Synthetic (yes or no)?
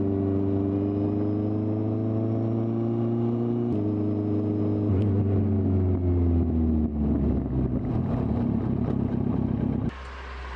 no